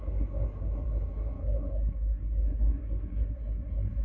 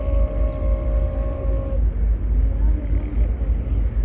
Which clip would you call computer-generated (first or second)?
first